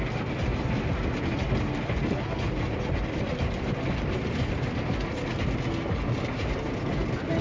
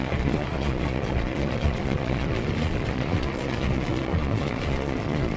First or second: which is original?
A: first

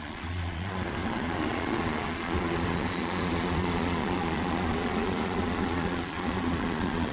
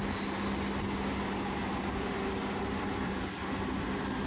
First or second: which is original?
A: second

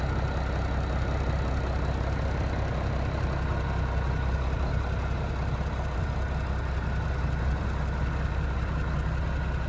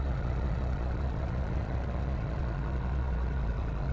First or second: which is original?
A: first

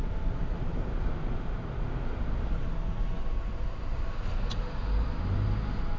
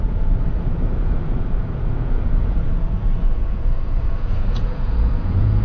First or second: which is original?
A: first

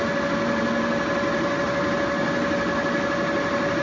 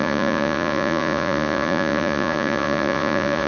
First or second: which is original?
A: first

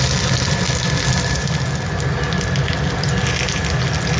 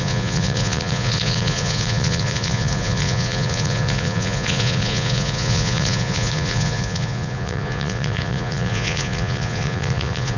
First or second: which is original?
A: first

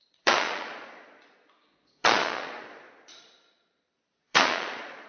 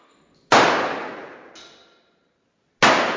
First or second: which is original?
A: second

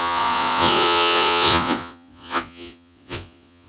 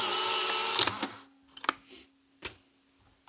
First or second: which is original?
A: second